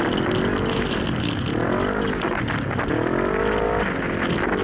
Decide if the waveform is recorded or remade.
recorded